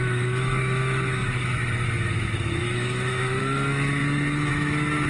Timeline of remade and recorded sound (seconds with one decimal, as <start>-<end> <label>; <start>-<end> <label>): 0.0-4.0 remade; 4.0-4.5 recorded; 4.5-5.1 remade